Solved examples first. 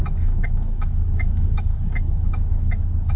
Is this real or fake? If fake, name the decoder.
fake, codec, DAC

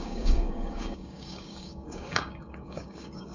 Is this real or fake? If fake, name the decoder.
fake, codec, DAC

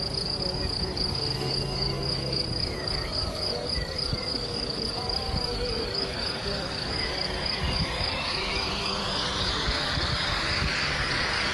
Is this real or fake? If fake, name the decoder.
fake, codec, DAC